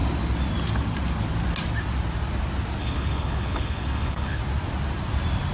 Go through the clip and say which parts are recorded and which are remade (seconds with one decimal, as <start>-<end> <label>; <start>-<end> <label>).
0.0-2.8 recorded; 2.8-4.4 remade; 4.4-5.5 recorded